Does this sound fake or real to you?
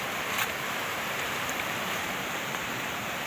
fake